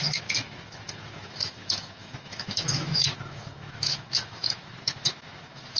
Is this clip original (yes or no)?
no